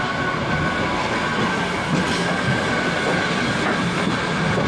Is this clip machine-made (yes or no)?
no